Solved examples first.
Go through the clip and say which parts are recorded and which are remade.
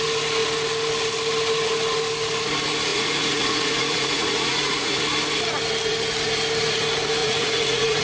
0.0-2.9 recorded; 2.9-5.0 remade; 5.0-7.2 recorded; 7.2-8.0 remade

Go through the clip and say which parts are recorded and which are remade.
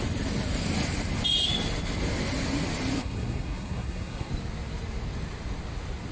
0.0-3.0 recorded; 3.0-4.3 remade; 4.3-6.1 recorded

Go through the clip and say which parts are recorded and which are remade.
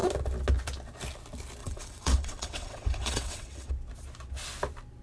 0.0-1.6 recorded; 1.6-3.7 remade; 3.7-5.0 recorded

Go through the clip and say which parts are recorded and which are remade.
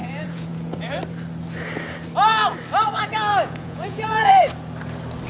0.0-1.0 remade; 1.0-3.3 recorded; 3.3-4.3 remade; 4.3-5.3 recorded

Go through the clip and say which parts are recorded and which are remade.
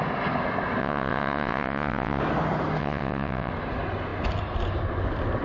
0.0-0.8 recorded; 0.8-2.2 remade; 2.2-2.8 recorded; 2.8-3.5 remade; 3.5-5.4 recorded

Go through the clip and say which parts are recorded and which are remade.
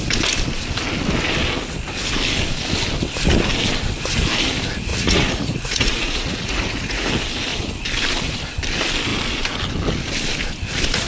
0.0-4.9 recorded; 4.9-7.1 remade; 7.1-11.1 recorded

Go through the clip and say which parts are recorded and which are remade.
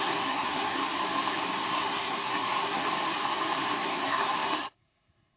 0.0-0.8 remade; 0.8-1.7 recorded; 1.7-2.8 remade; 2.8-3.7 recorded; 3.7-5.4 remade